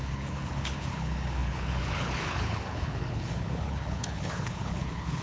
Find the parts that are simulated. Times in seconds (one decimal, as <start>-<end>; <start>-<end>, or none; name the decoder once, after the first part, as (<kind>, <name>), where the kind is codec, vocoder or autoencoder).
0.0-5.2 (codec, HILCodec)